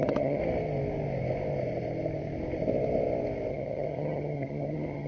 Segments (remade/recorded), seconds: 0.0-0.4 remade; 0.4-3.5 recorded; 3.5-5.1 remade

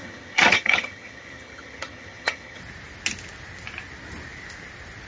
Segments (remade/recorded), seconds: 0.0-2.6 remade; 2.6-5.1 recorded

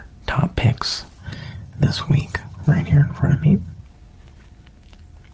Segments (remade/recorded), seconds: 0.0-1.2 recorded; 1.2-3.8 remade; 3.8-5.3 recorded

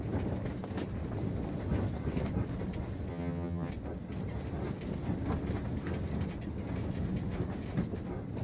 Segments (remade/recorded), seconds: 0.0-3.1 recorded; 3.1-3.7 remade; 3.7-8.4 recorded

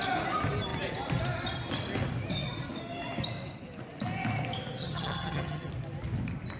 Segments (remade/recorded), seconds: 0.0-4.8 recorded; 4.8-5.7 remade; 5.7-6.6 recorded

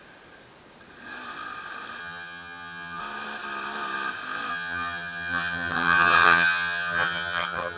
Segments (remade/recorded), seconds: 0.0-2.0 recorded; 2.0-3.0 remade; 3.0-4.5 recorded; 4.5-7.8 remade

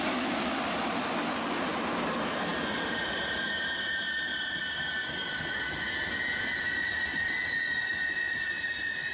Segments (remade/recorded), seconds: 0.0-9.1 recorded